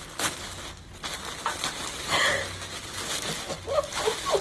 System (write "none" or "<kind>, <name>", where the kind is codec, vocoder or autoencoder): none